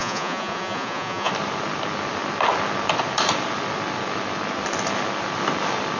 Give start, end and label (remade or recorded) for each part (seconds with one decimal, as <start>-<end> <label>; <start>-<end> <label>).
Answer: 0.0-1.3 remade; 1.3-6.0 recorded